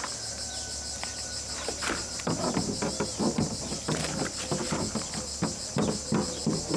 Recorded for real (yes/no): yes